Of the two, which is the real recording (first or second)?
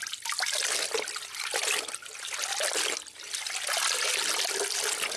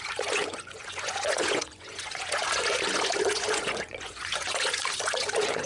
first